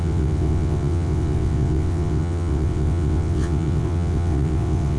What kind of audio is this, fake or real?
fake